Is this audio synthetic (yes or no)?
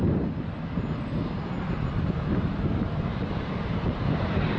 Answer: no